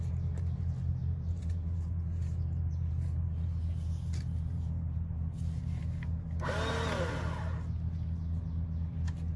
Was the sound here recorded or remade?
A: recorded